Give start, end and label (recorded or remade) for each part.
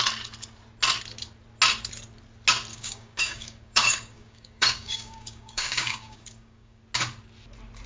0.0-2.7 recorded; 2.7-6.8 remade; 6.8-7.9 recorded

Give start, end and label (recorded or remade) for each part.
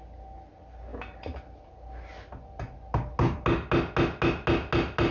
0.0-5.1 recorded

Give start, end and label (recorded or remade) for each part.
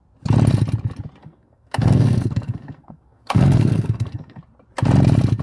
0.0-1.2 recorded; 1.2-4.4 remade; 4.4-5.4 recorded